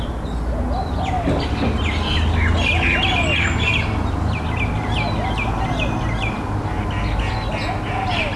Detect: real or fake real